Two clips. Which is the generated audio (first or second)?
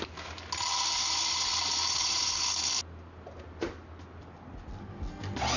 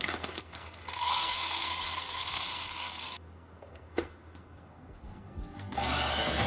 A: second